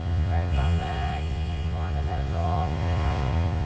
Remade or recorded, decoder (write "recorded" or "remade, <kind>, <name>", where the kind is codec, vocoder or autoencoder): remade, vocoder, Vocos